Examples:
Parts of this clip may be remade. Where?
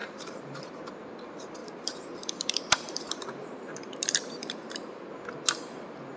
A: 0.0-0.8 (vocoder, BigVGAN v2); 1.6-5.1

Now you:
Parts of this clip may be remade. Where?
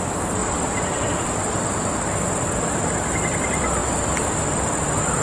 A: 0.4-1.1 (vocoder, BigVGAN v2)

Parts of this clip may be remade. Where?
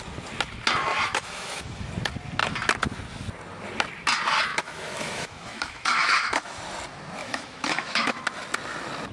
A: 0.9-1.9 (autoencoder, DAC-VAE); 4.5-6.6; 7.2-8.2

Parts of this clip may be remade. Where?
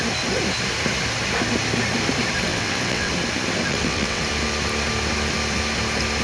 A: 2.5-3.1 (vocoder, WaveNeXt); 3.7-4.2